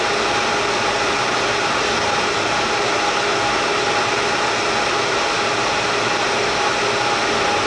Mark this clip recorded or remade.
recorded